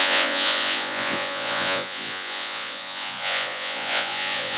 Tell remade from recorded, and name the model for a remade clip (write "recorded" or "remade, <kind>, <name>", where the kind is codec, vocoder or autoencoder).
remade, vocoder, Vocos